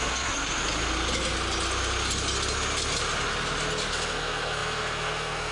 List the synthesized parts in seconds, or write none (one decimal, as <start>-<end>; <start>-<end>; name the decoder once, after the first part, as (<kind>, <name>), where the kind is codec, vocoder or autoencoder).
0.0-0.6 (codec, SNAC); 3.9-5.5